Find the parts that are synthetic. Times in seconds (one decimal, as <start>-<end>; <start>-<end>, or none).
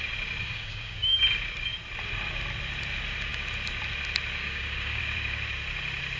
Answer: 0.4-1.2; 4.4-5.0